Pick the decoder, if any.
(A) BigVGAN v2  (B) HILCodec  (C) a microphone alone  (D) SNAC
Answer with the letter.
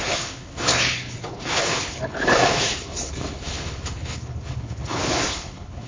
B